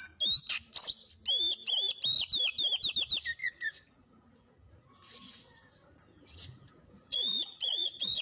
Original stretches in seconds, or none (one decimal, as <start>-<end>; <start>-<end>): 0.0-3.4